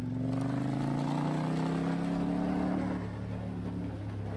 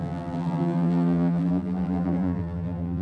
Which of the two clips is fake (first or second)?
second